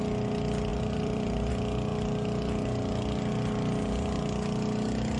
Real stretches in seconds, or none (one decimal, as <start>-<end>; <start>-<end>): 0.0-0.7; 1.5-5.2